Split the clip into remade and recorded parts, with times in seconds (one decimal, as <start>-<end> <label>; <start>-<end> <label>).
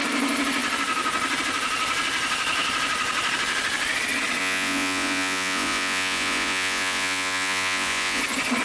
0.0-4.4 recorded; 4.4-8.2 remade; 8.2-8.6 recorded